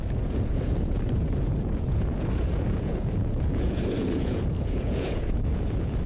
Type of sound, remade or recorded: remade